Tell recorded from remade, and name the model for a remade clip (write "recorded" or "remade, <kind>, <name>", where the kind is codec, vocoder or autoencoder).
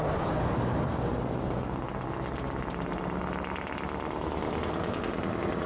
recorded